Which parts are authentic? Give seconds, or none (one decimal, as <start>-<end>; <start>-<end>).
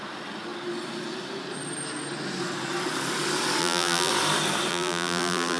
0.0-3.6; 4.1-4.7